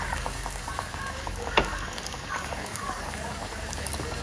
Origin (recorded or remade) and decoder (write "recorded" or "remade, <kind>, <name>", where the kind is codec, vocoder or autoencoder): remade, codec, DAC